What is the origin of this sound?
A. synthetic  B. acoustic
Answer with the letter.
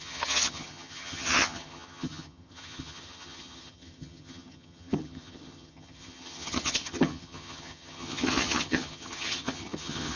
A